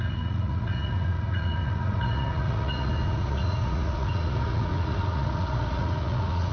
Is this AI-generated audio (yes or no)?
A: yes